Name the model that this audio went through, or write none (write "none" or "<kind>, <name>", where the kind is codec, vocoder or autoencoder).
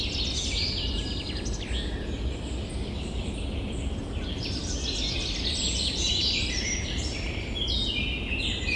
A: none